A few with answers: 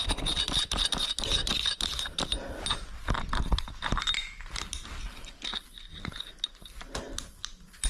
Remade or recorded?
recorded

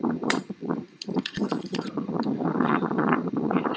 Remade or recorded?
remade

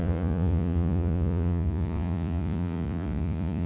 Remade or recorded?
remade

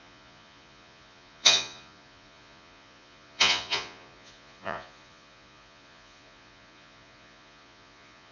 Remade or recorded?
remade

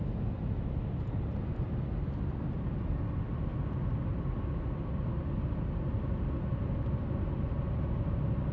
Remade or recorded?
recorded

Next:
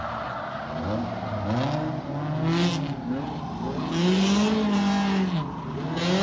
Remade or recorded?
recorded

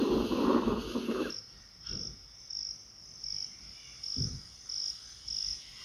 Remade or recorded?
recorded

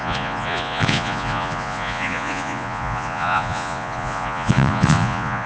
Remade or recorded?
remade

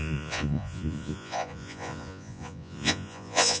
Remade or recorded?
remade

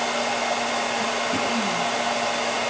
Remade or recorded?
recorded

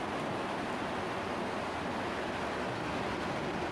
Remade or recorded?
recorded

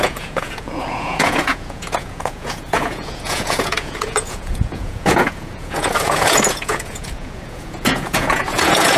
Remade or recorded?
remade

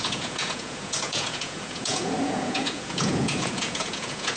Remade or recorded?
remade